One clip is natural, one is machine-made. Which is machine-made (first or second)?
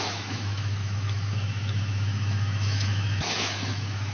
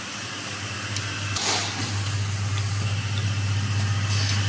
first